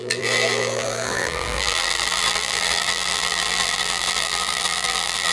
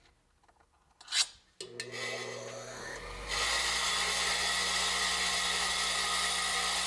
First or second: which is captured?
second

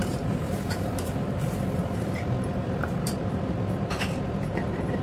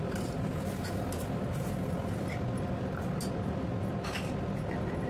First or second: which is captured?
second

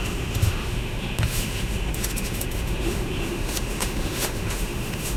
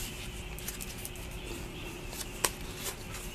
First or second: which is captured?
second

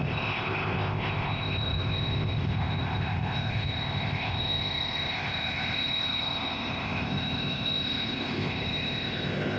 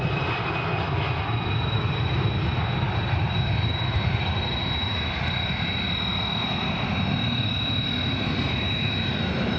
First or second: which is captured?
second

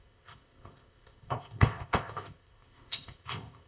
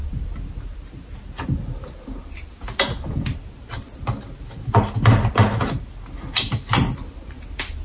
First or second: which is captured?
second